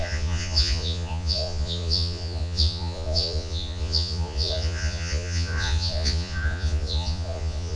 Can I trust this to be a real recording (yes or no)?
no